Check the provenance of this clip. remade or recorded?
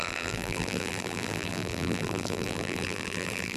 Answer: remade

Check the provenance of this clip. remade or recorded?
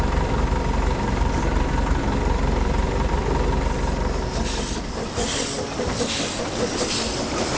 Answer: recorded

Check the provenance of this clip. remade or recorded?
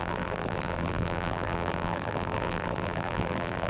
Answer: remade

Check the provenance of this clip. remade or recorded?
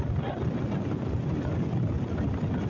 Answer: recorded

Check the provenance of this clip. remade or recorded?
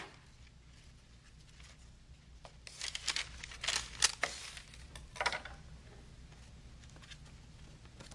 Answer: recorded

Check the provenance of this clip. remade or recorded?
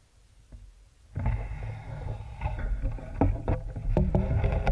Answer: recorded